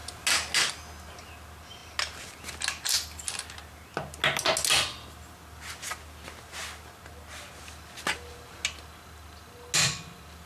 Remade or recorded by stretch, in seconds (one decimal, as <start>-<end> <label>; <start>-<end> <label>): 0.0-10.5 recorded

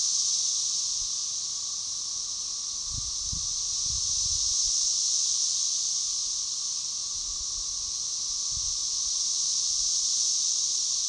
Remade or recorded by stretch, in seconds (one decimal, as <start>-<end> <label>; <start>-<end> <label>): 0.0-9.5 recorded; 9.5-10.3 remade; 10.3-11.1 recorded

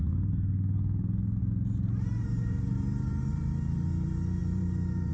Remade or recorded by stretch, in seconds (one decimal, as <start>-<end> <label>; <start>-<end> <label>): 0.0-1.4 recorded; 1.4-3.5 remade; 3.5-4.4 recorded; 4.4-5.1 remade

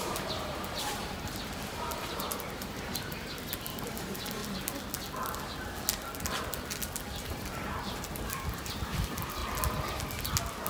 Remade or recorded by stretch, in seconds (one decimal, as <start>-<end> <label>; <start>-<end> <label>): 0.0-4.4 remade; 4.4-7.2 recorded; 7.2-9.4 remade; 9.4-10.7 recorded

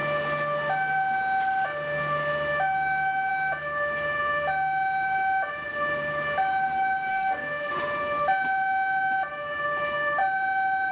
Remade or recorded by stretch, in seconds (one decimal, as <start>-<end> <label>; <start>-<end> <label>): 0.0-7.1 recorded; 7.1-7.7 remade; 7.7-10.9 recorded

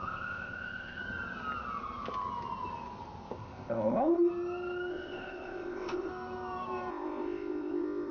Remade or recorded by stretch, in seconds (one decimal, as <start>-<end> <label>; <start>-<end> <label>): 0.0-1.0 remade; 1.0-3.3 recorded; 3.3-4.3 remade; 4.3-4.9 recorded; 4.9-6.1 remade; 6.1-6.9 recorded; 6.9-8.1 remade